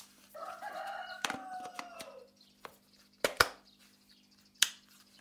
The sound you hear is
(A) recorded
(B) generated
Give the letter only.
B